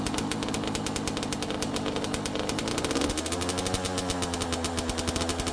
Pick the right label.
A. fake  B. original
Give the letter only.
B